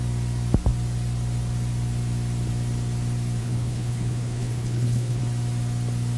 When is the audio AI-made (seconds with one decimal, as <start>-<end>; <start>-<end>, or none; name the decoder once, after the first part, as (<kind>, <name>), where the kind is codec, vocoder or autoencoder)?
3.4-5.2 (codec, HILCodec)